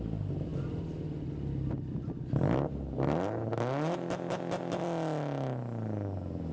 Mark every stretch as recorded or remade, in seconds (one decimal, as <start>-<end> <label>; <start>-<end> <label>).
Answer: 0.0-6.5 recorded